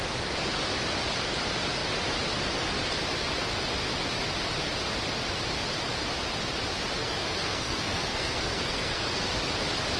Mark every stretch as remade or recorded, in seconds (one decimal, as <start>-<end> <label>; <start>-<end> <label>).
0.0-7.0 recorded; 7.0-9.3 remade; 9.3-10.0 recorded